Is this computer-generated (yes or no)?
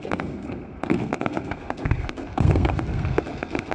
yes